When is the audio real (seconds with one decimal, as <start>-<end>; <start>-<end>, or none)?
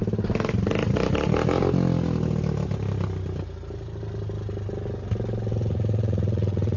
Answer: 0.0-5.5